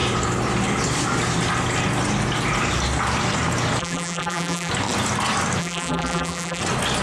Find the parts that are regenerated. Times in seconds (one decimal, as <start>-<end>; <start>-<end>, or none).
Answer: 3.8-4.7; 5.6-6.6